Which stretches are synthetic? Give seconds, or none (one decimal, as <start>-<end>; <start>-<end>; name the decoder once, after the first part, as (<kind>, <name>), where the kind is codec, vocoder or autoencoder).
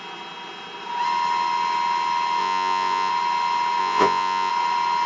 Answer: 2.4-3.1 (vocoder, Vocos); 3.8-4.5